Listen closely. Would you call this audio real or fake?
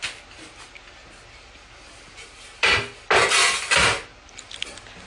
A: real